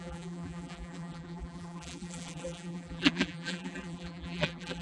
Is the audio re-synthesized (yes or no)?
yes